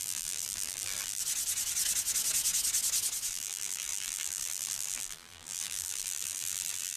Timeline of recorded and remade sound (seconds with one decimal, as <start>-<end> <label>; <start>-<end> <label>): 0.0-1.2 remade; 1.2-3.3 recorded; 3.3-7.0 remade